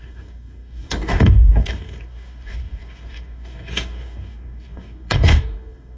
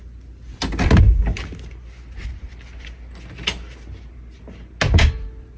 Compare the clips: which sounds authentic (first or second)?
second